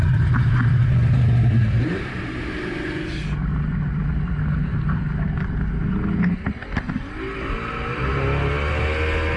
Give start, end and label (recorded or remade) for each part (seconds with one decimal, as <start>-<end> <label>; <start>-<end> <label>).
0.0-9.4 recorded